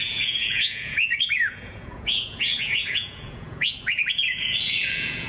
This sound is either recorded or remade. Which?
remade